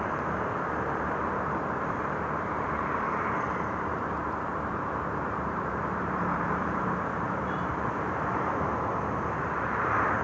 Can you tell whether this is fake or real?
fake